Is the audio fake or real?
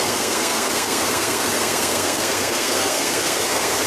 fake